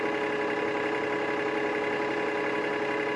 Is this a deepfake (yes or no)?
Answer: no